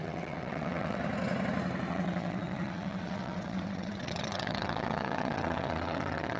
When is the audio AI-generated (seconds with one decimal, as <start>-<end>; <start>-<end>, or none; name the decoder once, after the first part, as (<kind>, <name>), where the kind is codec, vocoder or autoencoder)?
0.0-1.0 (vocoder, WaveNeXt); 1.9-6.4